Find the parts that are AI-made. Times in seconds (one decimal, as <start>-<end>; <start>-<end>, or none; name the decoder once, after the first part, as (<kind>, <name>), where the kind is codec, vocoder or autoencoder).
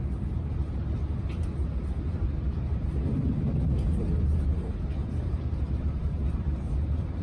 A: 0.0-1.0 (vocoder, BigVGAN v2); 5.3-7.2